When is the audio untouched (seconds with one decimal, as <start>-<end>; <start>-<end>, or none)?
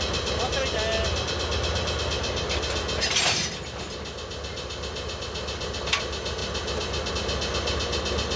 0.0-8.4